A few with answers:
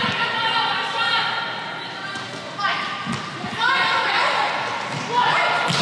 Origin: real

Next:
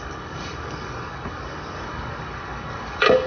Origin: fake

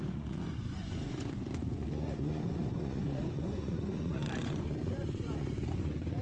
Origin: fake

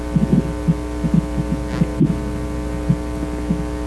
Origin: real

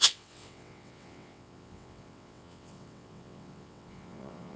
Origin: fake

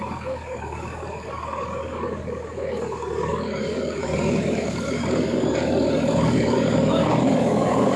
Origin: fake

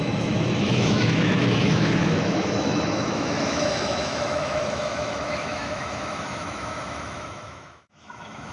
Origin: fake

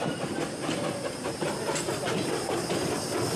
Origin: real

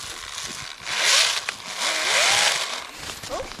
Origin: real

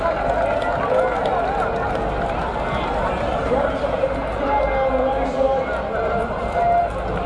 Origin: real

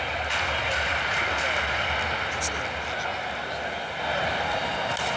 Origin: real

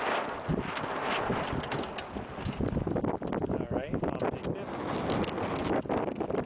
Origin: real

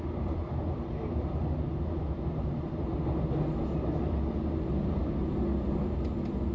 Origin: real